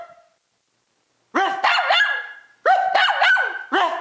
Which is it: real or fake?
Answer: real